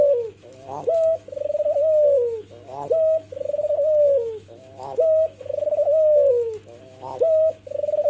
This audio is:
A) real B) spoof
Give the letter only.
B